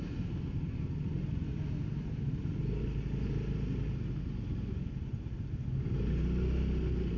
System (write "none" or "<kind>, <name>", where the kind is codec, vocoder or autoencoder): none